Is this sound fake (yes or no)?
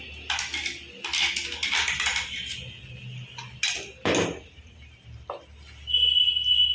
no